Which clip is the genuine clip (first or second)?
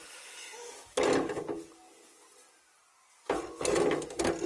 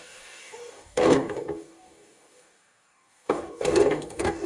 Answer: first